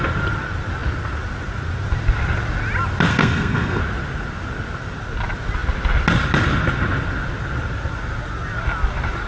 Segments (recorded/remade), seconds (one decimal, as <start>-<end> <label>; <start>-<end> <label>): 0.0-3.1 recorded; 3.1-3.8 remade; 3.8-9.3 recorded